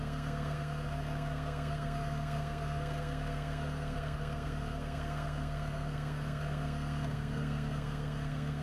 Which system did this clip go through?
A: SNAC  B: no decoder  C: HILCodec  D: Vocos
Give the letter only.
A